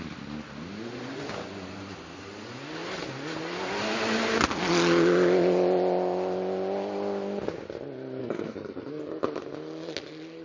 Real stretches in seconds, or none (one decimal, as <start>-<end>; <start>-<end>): 0.0-8.2; 9.0-10.4